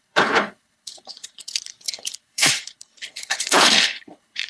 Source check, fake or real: fake